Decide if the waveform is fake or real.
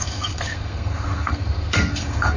fake